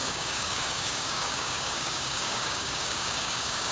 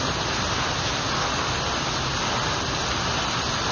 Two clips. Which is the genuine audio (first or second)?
second